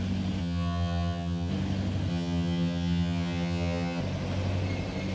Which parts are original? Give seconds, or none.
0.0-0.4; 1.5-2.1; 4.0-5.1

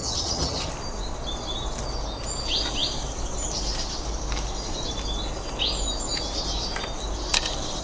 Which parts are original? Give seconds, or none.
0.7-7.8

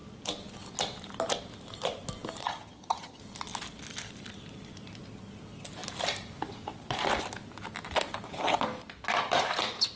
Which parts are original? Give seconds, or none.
0.0-2.4; 3.2-10.0

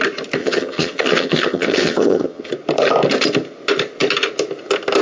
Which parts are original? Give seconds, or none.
0.0-0.4; 2.5-5.0